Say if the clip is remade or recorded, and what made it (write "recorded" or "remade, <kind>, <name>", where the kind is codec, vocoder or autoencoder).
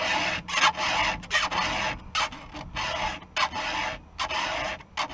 recorded